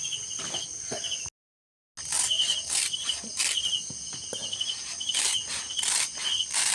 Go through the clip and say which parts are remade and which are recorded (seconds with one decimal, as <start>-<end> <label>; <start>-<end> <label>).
0.0-6.7 recorded